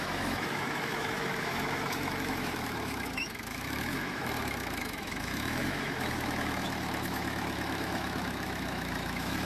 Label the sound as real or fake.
fake